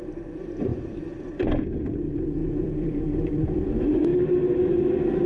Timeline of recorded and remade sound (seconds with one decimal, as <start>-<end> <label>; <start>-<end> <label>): 0.0-4.1 remade; 4.1-4.7 recorded; 4.7-5.3 remade